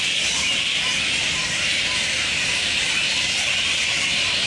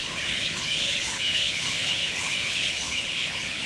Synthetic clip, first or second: second